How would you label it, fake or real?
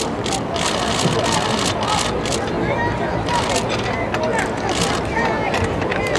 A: real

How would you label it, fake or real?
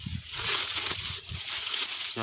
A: fake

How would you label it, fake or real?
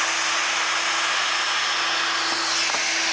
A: real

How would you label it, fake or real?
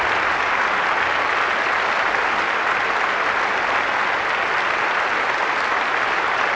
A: real